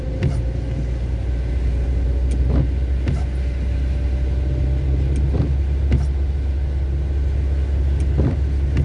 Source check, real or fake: real